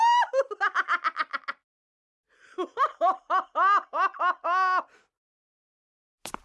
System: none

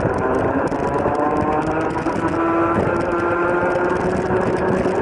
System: none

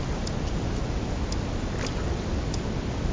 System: none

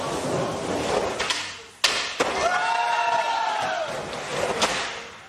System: none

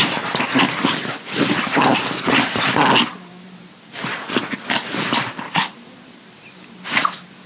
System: none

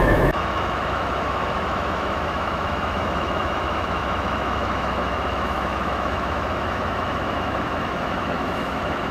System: autoencoder, DAC-VAE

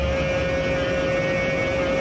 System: none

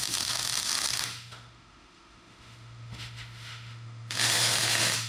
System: autoencoder, DAC-VAE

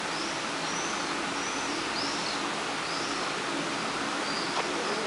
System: none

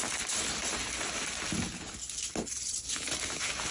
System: none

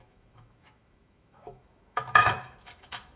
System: autoencoder, DAC-VAE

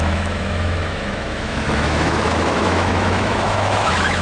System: autoencoder, DAC-VAE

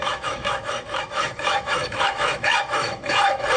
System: autoencoder, DAC-VAE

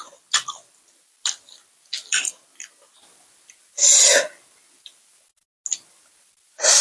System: none